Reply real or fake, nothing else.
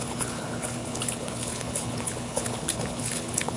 fake